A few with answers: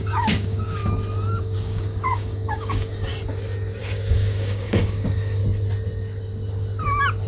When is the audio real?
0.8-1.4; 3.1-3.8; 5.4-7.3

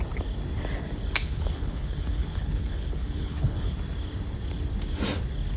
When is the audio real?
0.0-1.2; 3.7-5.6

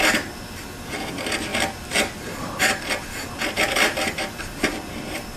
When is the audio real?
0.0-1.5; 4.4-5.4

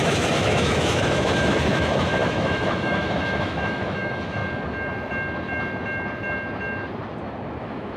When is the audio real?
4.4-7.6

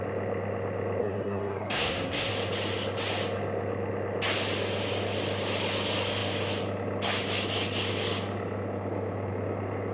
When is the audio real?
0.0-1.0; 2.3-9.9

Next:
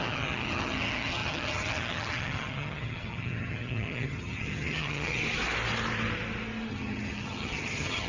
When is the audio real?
5.2-6.7

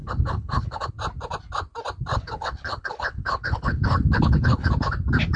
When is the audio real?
0.9-2.1; 4.7-5.4

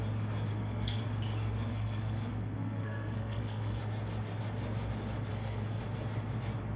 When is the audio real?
0.0-0.5; 1.0-1.7; 3.8-5.3; 5.8-6.8